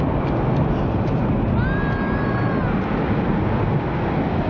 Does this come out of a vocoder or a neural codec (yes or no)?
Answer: no